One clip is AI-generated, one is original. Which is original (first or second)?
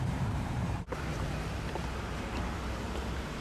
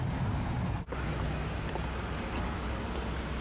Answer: second